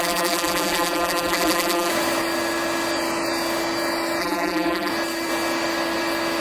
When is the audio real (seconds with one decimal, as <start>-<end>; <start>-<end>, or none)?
1.9-4.2; 4.9-6.4